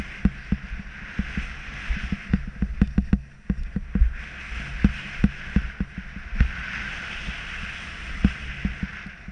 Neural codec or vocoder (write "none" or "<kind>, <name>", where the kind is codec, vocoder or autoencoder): none